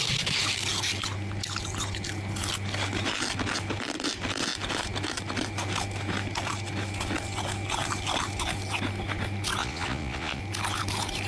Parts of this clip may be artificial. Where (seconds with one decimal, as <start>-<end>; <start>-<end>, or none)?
9.6-10.4